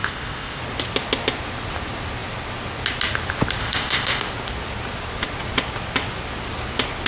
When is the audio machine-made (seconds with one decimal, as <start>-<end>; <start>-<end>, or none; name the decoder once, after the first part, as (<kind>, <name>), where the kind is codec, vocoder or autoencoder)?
0.0-0.6 (codec, ZipCodec); 3.6-4.2